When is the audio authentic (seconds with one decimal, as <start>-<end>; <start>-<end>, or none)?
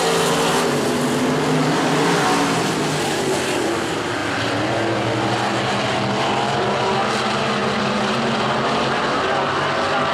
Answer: 0.0-10.1